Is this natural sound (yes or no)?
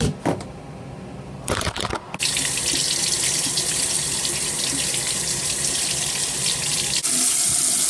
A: yes